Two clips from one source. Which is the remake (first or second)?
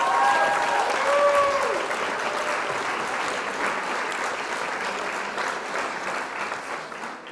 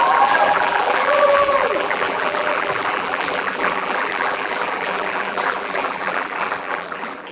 second